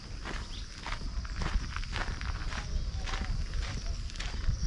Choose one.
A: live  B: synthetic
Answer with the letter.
A